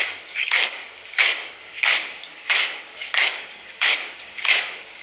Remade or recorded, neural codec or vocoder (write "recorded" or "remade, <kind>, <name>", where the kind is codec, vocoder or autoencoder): remade, codec, DAC